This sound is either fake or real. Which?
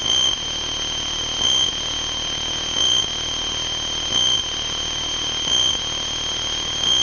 real